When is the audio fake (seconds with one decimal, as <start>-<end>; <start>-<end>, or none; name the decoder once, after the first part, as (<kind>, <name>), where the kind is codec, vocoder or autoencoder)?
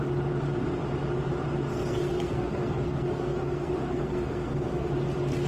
1.7-4.9 (codec, SNAC)